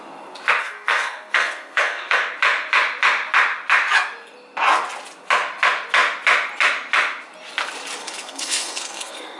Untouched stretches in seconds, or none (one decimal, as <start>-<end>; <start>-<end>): 0.0-0.6; 2.2-8.0